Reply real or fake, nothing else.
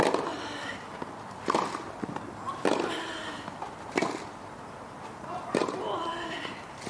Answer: real